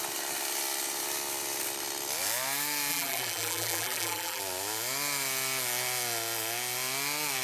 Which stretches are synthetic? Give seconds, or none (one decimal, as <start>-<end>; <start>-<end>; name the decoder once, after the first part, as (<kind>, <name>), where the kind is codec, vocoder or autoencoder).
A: 2.9-4.4 (vocoder, BigVGAN v2)